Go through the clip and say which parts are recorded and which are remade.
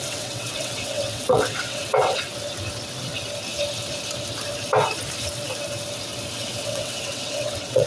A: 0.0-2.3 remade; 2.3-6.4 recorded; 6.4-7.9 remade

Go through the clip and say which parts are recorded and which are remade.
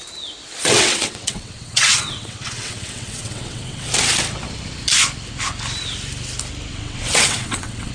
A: 0.0-0.6 recorded; 0.6-3.9 remade; 3.9-6.7 recorded; 6.7-7.9 remade